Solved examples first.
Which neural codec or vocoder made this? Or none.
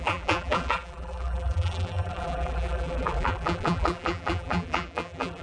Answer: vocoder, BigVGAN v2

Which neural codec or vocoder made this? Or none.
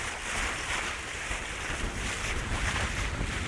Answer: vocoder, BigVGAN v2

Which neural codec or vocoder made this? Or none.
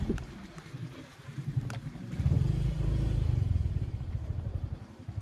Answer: vocoder, BigVGAN v2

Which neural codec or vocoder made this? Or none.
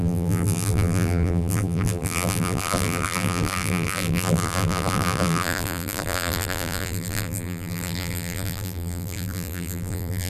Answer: vocoder, BigVGAN v2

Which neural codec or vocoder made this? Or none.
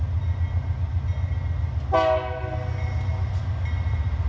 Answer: none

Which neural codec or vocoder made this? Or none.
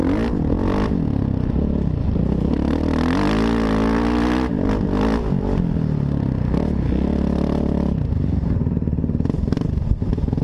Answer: none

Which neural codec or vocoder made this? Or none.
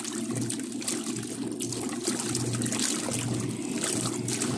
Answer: none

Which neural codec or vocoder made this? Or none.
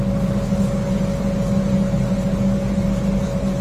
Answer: none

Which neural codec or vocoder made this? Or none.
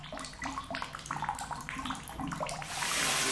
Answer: vocoder, BigVGAN v2